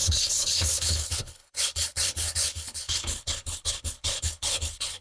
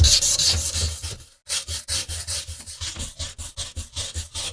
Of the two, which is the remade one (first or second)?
first